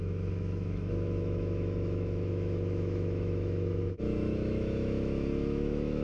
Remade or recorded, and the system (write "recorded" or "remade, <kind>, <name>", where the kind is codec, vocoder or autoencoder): remade, autoencoder, DAC-VAE